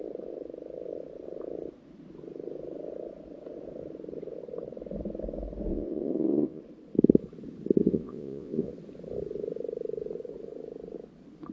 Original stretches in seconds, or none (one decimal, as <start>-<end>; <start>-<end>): 0.0-5.7; 6.6-7.8; 8.7-11.5